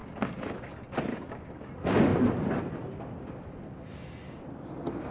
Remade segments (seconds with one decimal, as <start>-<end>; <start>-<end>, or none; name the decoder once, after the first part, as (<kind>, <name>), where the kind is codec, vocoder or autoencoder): 0.0-0.5 (codec, DAC); 1.1-1.7